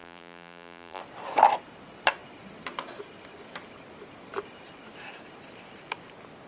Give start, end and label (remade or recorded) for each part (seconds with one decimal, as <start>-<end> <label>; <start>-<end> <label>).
0.0-1.0 remade; 1.0-6.5 recorded